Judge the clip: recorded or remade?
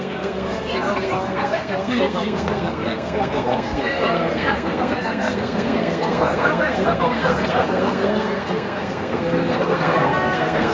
remade